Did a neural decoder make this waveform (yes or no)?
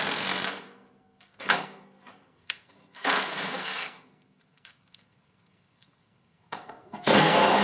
yes